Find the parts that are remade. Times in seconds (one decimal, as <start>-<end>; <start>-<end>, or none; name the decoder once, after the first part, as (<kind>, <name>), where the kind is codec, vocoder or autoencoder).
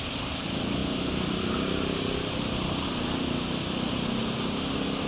none